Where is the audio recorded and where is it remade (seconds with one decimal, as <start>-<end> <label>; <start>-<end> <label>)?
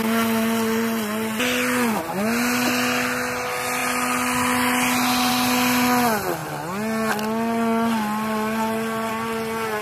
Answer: 0.0-9.8 recorded